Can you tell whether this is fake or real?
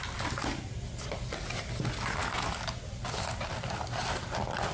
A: real